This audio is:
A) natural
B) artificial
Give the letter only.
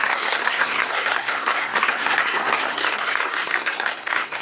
B